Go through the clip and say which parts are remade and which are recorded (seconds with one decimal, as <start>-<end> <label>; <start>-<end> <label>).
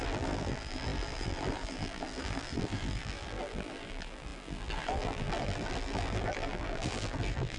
0.0-7.6 remade